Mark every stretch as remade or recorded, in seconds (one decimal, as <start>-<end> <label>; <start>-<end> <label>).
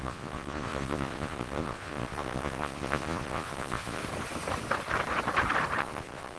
0.0-4.0 remade; 4.0-5.8 recorded; 5.8-6.4 remade